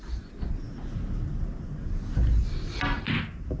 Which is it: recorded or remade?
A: recorded